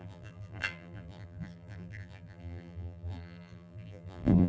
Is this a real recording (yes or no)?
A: no